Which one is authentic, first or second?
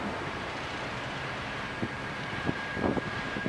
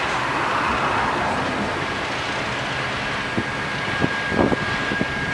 second